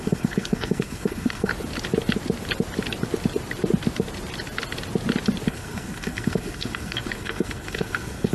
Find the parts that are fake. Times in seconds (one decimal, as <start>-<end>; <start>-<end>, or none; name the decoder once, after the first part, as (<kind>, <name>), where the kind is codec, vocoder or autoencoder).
0.0-1.5 (codec, SNAC); 5.5-8.3